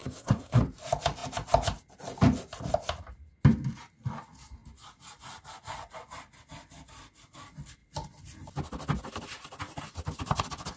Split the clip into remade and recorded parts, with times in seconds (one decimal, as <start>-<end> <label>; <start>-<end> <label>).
0.0-0.6 remade; 0.6-10.8 recorded